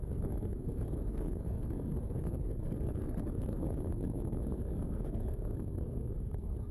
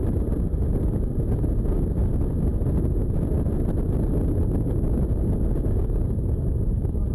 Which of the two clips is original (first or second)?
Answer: second